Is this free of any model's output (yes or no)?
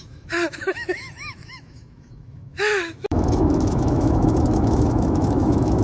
no